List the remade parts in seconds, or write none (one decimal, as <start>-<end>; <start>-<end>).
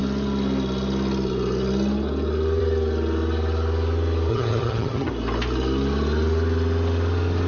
4.3-5.1